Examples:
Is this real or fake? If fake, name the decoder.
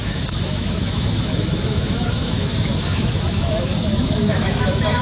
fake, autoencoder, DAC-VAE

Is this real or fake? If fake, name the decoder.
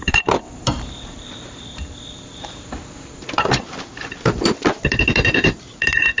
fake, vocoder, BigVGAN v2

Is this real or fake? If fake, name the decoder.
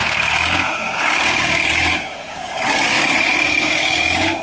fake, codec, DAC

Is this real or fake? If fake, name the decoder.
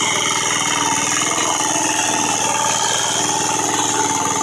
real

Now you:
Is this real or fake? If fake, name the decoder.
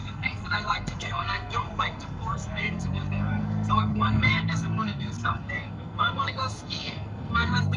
fake, codec, SNAC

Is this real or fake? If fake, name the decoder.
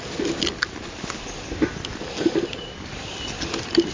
real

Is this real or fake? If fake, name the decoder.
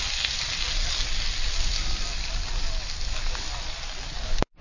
real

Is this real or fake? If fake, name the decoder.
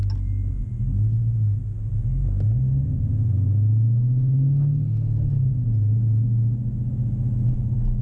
real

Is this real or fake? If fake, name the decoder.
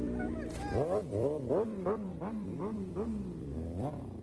fake, vocoder, BigVGAN v2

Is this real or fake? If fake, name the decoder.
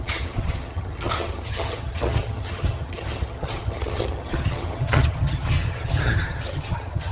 fake, vocoder, HiFi-GAN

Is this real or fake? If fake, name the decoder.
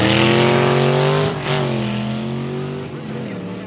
real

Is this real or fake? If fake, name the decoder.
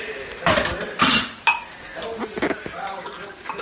real